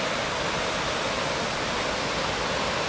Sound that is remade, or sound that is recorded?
recorded